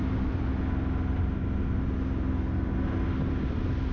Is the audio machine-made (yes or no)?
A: no